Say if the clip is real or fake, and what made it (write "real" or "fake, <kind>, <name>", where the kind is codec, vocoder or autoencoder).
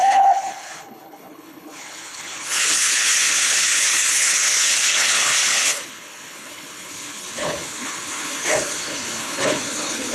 fake, codec, HILCodec